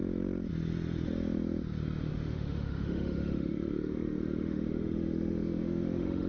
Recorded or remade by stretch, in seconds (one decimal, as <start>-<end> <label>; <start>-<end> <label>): 0.0-2.1 recorded; 2.1-6.3 remade